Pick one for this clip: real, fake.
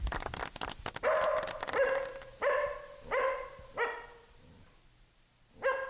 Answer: real